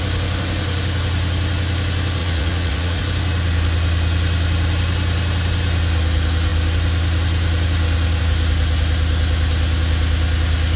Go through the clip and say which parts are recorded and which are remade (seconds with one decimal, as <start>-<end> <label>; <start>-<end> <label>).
0.0-2.2 recorded; 2.2-3.0 remade; 3.0-10.8 recorded